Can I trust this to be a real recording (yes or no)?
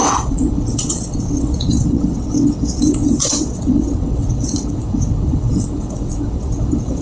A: no